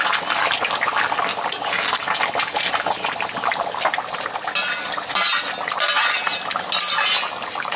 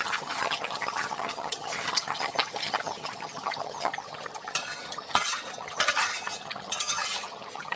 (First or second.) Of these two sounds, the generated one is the second